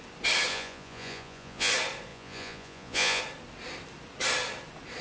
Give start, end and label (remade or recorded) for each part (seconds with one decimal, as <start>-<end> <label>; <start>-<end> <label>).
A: 0.0-0.5 recorded; 0.5-1.7 remade; 1.7-2.1 recorded; 2.1-3.2 remade; 3.2-5.0 recorded